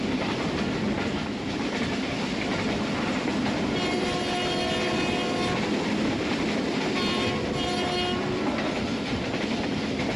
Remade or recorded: recorded